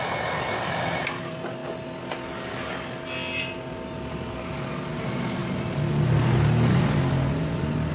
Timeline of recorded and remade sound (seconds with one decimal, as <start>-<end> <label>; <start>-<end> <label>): 0.0-7.9 recorded

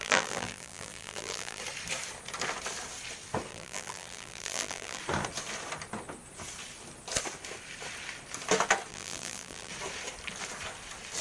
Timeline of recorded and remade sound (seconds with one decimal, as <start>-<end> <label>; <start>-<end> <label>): 0.0-1.6 remade; 1.6-3.5 recorded; 3.5-5.0 remade; 5.0-8.9 recorded; 8.9-9.7 remade; 9.7-11.2 recorded

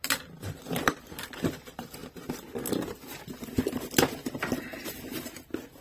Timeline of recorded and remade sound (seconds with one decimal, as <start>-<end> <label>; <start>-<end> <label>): 0.0-2.0 remade; 2.0-5.8 recorded

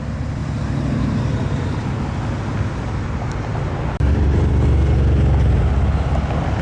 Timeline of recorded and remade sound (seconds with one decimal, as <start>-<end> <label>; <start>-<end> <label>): 0.0-0.4 recorded; 0.4-1.9 remade; 1.9-3.5 recorded; 3.5-4.5 remade; 4.5-6.6 recorded